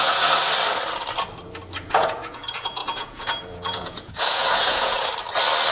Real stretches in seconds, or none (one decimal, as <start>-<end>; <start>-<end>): 0.4-1.9; 5.1-5.7